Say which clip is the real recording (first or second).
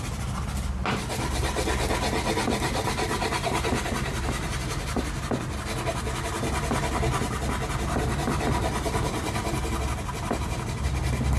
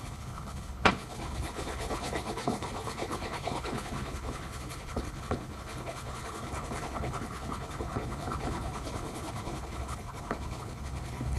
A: first